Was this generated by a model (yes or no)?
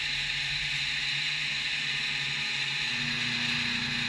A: no